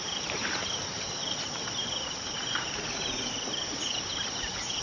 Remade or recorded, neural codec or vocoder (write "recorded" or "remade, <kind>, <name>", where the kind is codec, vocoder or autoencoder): remade, vocoder, BigVGAN v2